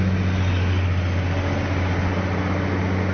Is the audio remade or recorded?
recorded